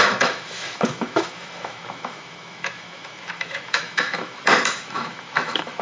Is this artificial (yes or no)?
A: yes